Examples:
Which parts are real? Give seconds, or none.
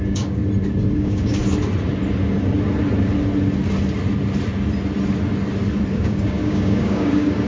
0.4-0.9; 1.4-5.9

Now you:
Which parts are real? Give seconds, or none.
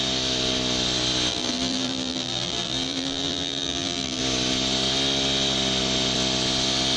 0.0-1.3; 4.2-7.0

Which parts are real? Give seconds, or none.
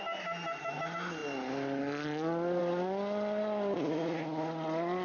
0.0-5.0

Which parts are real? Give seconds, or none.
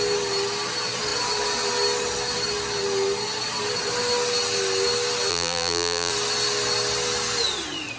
0.0-5.3; 6.1-8.0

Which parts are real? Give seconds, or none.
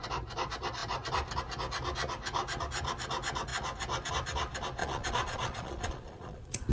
0.0-4.8